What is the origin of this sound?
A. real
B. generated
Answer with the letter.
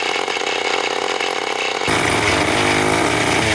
A